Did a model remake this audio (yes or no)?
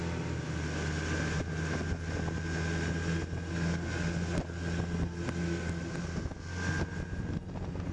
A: no